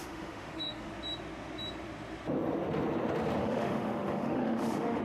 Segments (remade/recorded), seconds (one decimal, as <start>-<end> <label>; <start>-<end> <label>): 0.0-0.9 remade; 0.9-3.4 recorded; 3.4-5.0 remade